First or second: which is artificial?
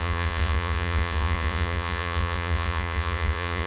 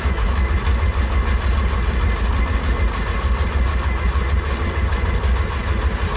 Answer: first